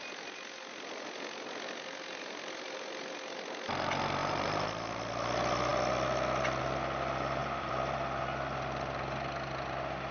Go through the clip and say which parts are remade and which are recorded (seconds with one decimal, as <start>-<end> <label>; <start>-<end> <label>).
0.0-4.2 recorded; 4.2-4.8 remade; 4.8-7.4 recorded; 7.4-8.2 remade; 8.2-10.1 recorded